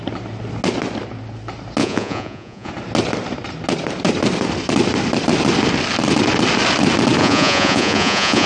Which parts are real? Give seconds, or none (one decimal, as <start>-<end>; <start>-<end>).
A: 0.0-1.8; 2.7-7.2

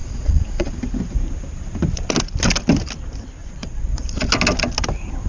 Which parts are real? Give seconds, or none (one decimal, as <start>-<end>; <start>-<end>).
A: 0.7-3.4; 4.3-5.3